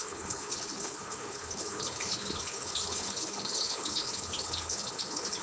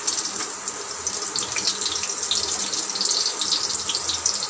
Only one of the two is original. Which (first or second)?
second